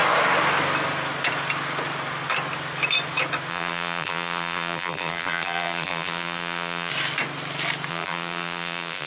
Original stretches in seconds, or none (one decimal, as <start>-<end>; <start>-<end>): 0.0-3.5; 6.9-7.9

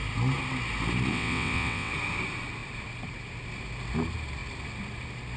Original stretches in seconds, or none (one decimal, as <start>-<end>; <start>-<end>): 0.0-1.1; 1.9-5.4

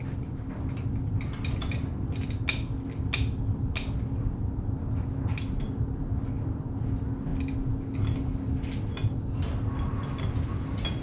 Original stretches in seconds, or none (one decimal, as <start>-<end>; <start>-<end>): 0.0-11.0